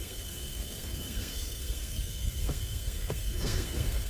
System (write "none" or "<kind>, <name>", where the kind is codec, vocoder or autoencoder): codec, SNAC